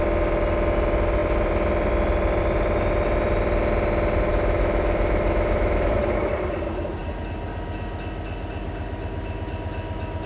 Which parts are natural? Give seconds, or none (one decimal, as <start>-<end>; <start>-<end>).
0.0-4.3; 6.0-10.3

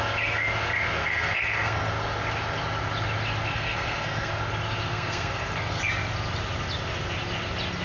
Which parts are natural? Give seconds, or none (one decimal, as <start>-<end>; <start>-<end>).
0.0-1.0; 1.9-3.5; 4.3-4.9; 5.8-7.8

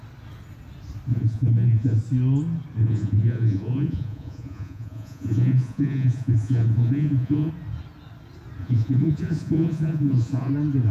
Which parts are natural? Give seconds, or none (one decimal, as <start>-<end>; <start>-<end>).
0.0-1.1; 2.0-2.8; 7.5-8.6; 10.5-10.9

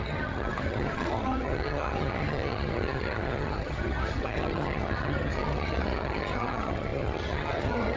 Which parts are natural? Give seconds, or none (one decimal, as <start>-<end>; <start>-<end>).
none